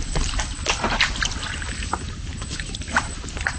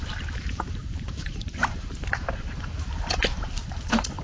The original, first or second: first